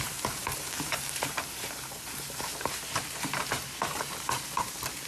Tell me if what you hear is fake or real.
fake